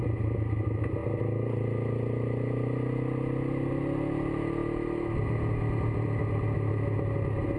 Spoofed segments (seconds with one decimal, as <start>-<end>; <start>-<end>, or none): none